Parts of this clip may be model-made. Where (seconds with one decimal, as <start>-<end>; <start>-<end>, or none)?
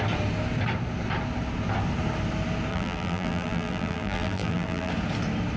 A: 2.7-4.9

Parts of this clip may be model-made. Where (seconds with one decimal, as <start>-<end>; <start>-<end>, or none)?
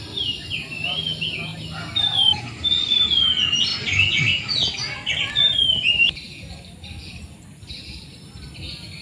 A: none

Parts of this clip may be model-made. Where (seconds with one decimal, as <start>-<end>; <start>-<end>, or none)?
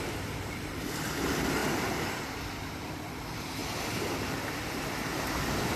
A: 0.0-1.6; 2.6-3.6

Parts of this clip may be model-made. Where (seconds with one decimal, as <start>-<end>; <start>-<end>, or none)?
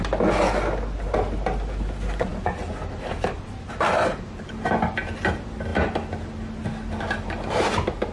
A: none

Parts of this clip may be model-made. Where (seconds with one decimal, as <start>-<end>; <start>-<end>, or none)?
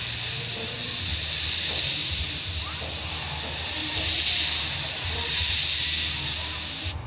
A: 1.1-2.3; 3.8-5.0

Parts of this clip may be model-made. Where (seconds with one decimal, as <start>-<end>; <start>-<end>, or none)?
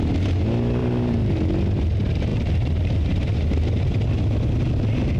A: 0.8-1.4; 2.3-4.1